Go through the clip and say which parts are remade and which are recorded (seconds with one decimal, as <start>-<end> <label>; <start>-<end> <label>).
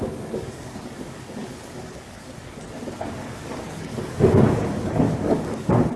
0.0-6.0 remade